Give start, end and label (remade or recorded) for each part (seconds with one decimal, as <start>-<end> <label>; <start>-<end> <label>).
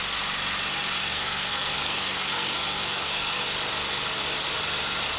0.0-1.0 recorded; 1.0-3.4 remade; 3.4-5.2 recorded